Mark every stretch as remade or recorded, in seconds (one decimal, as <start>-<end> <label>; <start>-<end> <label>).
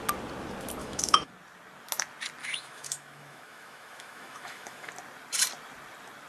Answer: 0.0-0.8 recorded; 0.8-1.3 remade; 1.3-2.4 recorded; 2.4-4.9 remade; 4.9-6.3 recorded